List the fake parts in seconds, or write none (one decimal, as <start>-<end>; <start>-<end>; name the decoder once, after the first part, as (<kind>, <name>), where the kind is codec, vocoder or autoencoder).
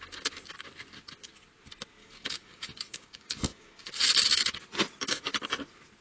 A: 2.0-4.0 (codec, DAC)